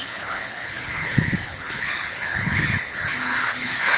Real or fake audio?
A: fake